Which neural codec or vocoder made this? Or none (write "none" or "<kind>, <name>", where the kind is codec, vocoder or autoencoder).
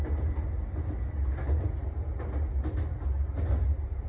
none